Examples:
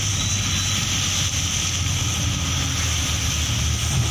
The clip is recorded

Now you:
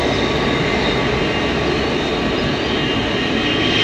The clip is recorded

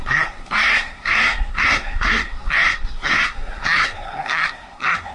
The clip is remade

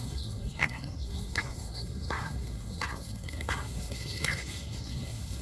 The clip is remade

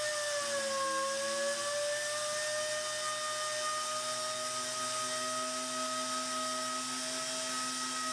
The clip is recorded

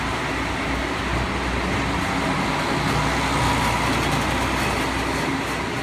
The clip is recorded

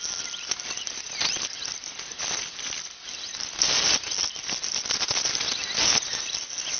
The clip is recorded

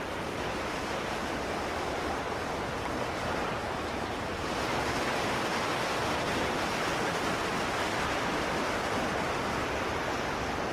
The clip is recorded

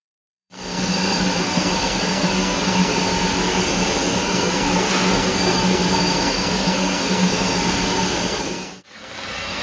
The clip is remade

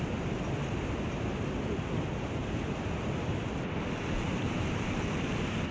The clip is recorded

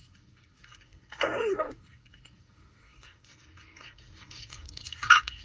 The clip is remade